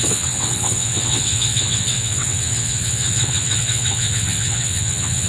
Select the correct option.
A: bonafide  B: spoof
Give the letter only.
B